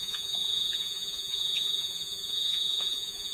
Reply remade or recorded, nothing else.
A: remade